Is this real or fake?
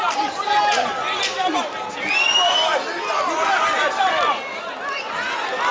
real